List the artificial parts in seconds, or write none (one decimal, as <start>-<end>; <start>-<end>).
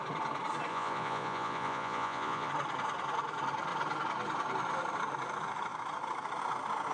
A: 0.7-2.5